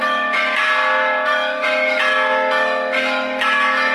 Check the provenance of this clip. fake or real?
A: fake